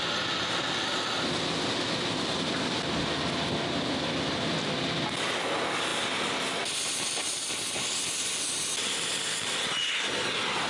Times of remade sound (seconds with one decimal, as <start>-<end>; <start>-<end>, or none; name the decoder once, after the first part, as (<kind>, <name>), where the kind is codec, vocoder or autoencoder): none

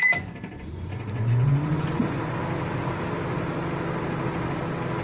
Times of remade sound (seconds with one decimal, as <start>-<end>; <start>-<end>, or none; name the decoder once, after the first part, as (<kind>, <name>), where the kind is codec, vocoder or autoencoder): 0.0-2.3 (vocoder, Vocos)

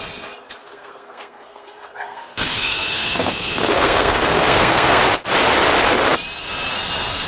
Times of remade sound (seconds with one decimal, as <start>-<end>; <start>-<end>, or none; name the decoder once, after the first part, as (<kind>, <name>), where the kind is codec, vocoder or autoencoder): 0.6-5.0 (codec, SNAC)

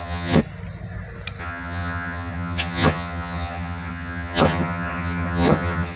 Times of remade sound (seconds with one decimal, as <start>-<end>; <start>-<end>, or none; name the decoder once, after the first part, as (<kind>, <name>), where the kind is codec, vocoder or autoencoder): 0.0-0.4 (vocoder, HiFi-GAN); 1.4-6.0

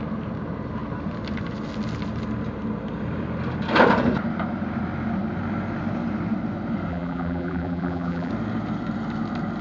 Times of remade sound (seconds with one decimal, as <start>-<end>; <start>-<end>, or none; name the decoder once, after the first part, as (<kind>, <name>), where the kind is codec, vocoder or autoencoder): 6.9-8.3 (vocoder, BigVGAN v2)

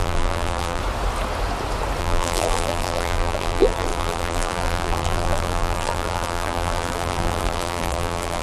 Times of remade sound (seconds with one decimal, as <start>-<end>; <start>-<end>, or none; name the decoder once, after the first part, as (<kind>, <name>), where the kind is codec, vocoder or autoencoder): 0.0-0.8 (vocoder, BigVGAN v2); 2.0-8.4

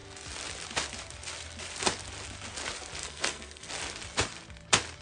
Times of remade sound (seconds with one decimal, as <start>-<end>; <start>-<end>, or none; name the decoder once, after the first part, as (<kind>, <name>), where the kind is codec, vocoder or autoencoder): 3.0-3.7 (codec, SNAC)